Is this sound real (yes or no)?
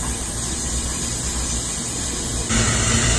yes